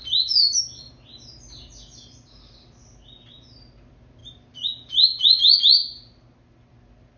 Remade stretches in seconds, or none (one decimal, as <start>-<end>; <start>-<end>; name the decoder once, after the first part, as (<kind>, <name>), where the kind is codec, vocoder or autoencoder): 0.0-0.6 (vocoder, BigVGAN v2)